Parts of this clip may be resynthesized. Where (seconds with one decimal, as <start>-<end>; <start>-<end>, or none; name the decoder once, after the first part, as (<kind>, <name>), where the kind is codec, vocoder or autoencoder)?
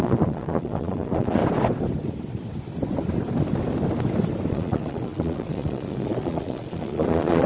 0.0-1.4 (vocoder, Vocos); 4.5-7.5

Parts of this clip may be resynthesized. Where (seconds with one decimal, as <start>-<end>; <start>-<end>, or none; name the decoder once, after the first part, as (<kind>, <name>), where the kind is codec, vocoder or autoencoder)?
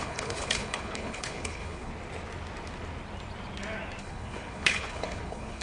0.0-1.9 (codec, HILCodec); 4.0-5.6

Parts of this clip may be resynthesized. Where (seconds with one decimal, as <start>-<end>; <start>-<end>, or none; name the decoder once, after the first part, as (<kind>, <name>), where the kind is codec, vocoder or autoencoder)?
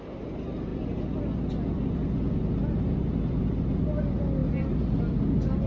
none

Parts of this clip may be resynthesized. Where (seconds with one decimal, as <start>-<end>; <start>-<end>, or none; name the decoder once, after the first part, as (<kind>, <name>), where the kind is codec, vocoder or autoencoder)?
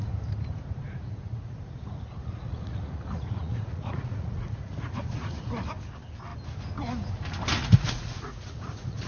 0.8-5.5 (vocoder, Vocos); 7.6-9.1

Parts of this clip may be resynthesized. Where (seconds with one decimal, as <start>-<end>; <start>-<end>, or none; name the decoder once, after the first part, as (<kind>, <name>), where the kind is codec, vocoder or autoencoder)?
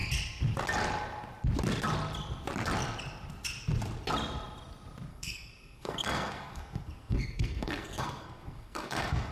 5.1-9.3 (codec, SNAC)